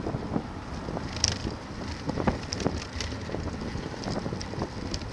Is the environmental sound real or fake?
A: real